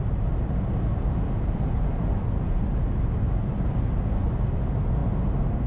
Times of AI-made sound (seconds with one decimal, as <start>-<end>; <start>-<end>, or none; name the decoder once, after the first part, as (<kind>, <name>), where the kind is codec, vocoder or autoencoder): 0.9-4.3 (vocoder, BigVGAN v2)